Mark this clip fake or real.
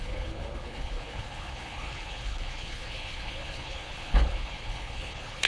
fake